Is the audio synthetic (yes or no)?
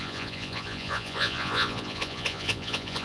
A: yes